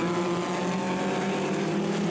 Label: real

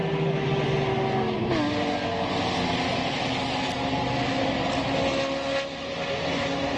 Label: real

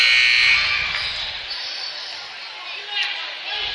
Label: real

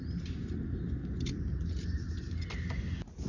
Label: real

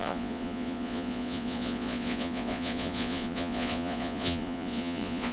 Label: fake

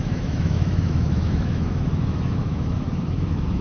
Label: fake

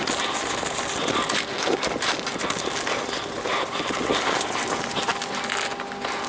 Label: real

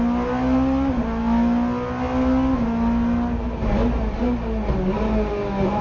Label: real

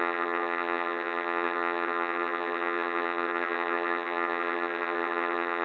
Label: fake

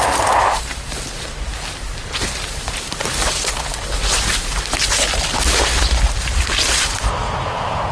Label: real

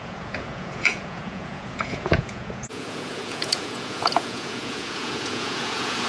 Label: fake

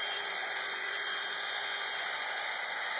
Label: fake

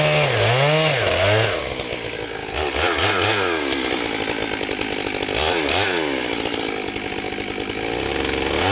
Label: real